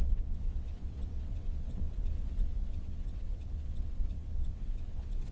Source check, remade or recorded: remade